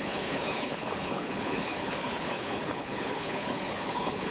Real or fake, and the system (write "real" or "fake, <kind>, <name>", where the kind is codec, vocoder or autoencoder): fake, codec, HILCodec